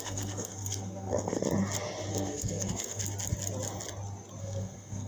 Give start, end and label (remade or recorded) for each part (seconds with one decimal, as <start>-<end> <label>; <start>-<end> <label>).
0.0-1.4 remade; 1.4-2.1 recorded; 2.1-3.0 remade; 3.0-4.4 recorded; 4.4-5.1 remade